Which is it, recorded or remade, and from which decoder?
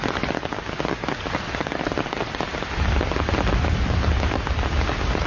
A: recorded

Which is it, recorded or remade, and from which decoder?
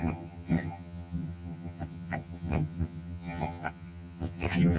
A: remade, vocoder, HiFi-GAN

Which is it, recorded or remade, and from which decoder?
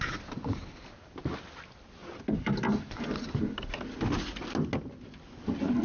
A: recorded